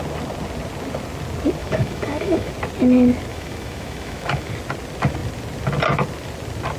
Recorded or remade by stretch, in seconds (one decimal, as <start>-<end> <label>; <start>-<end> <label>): 0.0-1.6 recorded; 1.6-2.5 remade; 2.5-3.3 recorded; 3.3-4.5 remade; 4.5-6.8 recorded